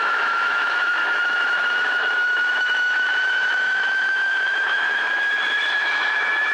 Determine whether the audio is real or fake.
fake